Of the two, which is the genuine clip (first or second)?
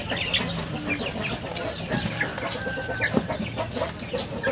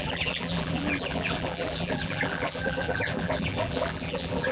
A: first